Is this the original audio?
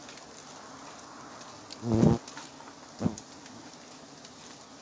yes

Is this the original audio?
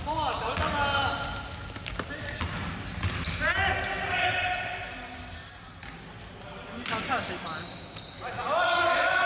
yes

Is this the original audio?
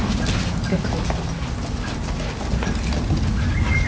yes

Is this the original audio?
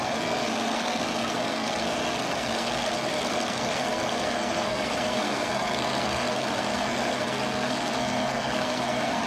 no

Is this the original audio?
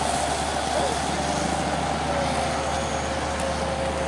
yes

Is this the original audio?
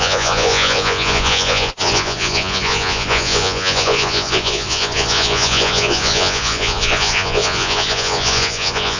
no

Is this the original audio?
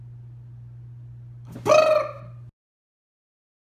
yes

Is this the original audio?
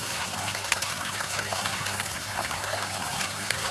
no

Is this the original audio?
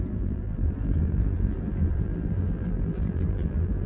no